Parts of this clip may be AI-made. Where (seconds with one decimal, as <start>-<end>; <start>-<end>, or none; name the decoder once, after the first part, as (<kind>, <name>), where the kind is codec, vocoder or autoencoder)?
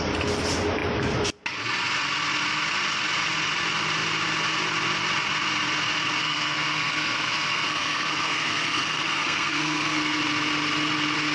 6.2-10.2 (codec, SNAC)